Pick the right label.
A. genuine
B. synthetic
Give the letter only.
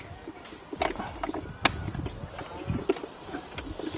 A